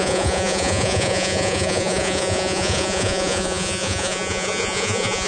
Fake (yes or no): yes